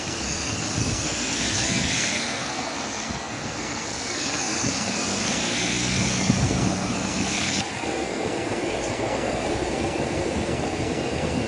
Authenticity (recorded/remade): remade